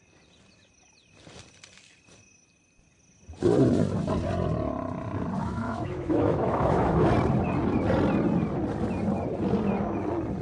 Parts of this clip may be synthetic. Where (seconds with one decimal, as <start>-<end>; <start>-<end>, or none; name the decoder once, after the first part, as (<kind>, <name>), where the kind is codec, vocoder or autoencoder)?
5.4-7.1 (autoencoder, DAC-VAE)